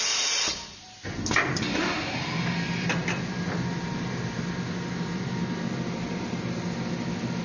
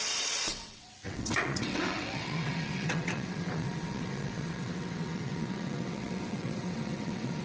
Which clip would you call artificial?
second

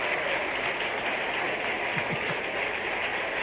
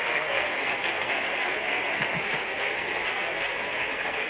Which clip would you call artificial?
second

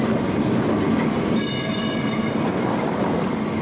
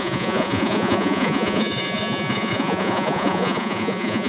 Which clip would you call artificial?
second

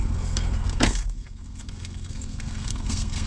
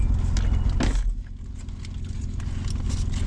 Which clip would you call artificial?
first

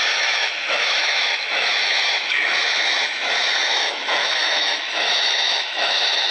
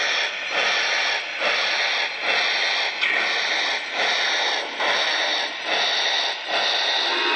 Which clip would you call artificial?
first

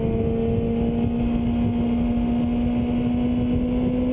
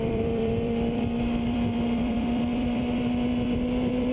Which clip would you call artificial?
second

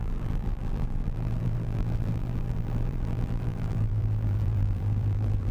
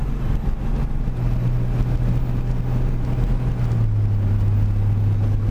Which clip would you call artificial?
first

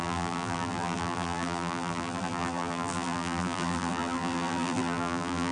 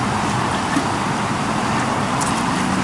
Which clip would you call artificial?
first